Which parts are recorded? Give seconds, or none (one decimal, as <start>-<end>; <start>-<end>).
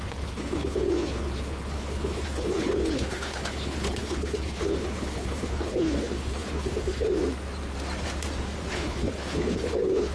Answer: 7.2-8.7